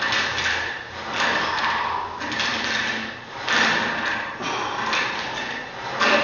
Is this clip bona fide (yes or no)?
yes